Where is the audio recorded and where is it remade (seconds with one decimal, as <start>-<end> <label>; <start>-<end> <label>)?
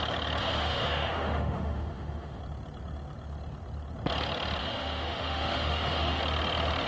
0.0-0.4 recorded; 0.4-2.4 remade; 2.4-4.6 recorded; 4.6-6.2 remade; 6.2-6.9 recorded